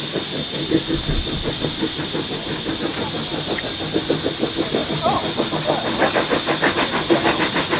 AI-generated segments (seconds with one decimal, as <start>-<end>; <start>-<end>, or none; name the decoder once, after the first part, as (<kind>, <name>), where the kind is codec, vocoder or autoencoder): none